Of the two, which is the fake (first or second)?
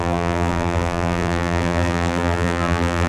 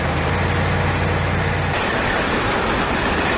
first